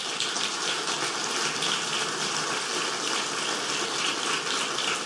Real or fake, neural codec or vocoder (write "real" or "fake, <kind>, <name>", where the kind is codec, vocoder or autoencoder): real